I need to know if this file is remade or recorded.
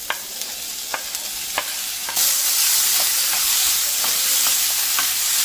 recorded